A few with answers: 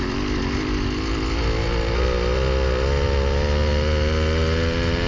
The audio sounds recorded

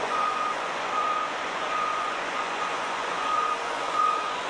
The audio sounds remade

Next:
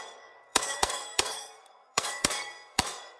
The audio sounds remade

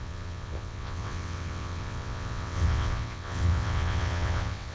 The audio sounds remade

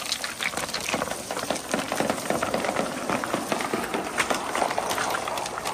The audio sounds recorded